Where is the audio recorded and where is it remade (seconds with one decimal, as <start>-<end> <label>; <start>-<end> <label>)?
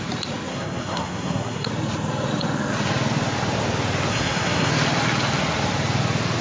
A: 0.0-0.5 recorded; 0.5-1.7 remade; 1.7-4.1 recorded; 4.1-4.7 remade; 4.7-6.4 recorded